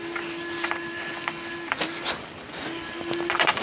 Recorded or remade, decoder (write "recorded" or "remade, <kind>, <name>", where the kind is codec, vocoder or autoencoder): remade, vocoder, BigVGAN v2